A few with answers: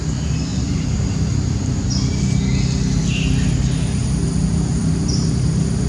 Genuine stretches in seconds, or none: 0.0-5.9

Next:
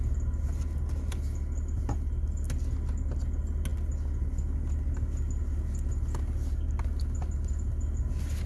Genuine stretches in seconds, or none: 0.0-8.5

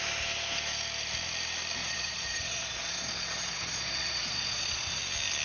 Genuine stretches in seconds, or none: 0.0-1.8; 5.0-5.4

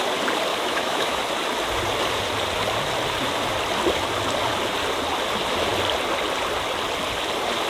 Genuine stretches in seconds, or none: 0.0-0.5; 1.2-7.7

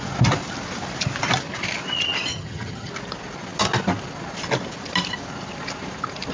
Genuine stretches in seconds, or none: 0.0-2.3; 2.9-6.3